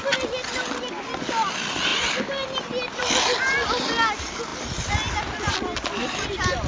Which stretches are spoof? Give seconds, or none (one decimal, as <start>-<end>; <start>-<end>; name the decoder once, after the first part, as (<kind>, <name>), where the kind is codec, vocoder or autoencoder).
none